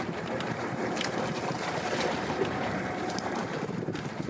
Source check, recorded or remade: remade